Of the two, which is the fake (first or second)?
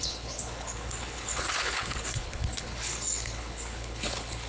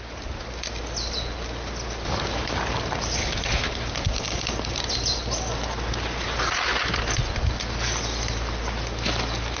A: first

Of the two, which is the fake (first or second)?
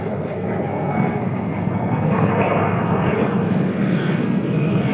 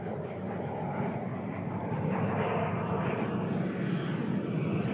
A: first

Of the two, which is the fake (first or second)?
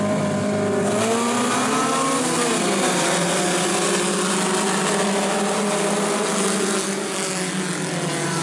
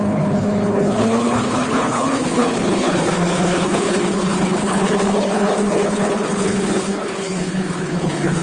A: second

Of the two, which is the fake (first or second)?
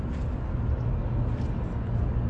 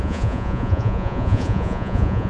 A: second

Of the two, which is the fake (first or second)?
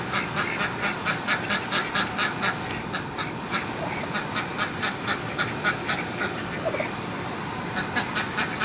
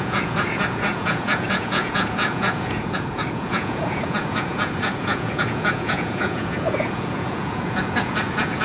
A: second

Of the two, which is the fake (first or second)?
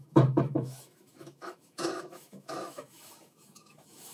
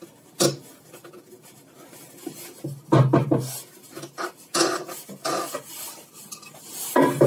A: first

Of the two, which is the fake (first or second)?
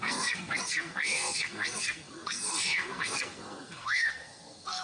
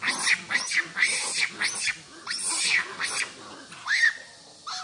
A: first